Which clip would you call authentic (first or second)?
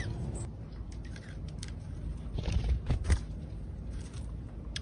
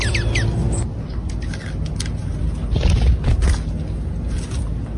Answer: second